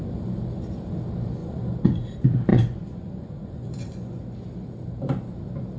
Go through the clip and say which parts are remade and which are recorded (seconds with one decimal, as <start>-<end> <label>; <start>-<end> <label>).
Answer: 0.0-1.4 recorded; 1.4-2.0 remade; 2.0-2.5 recorded; 2.5-4.2 remade; 4.2-5.8 recorded